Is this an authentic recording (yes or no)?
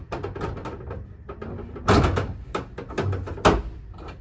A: yes